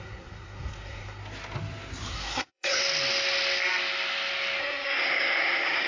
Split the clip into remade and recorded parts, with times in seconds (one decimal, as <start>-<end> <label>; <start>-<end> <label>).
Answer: 0.0-1.2 remade; 1.2-2.1 recorded; 2.1-2.8 remade; 2.8-4.6 recorded; 4.6-5.9 remade